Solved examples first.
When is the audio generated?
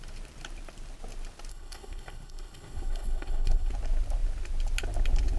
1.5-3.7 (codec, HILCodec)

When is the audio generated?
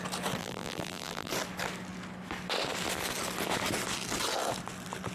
0.4-1.3 (vocoder, BigVGAN v2)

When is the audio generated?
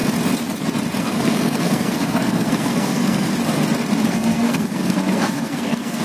1.0-3.3 (codec, SNAC); 4.1-6.0